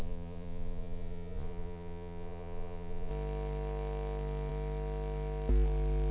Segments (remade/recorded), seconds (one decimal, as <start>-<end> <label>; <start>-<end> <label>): 0.0-3.1 remade; 3.1-6.1 recorded